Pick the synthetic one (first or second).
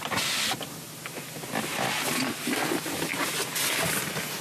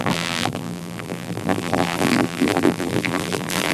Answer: second